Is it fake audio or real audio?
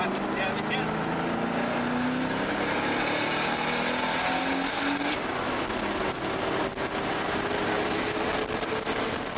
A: real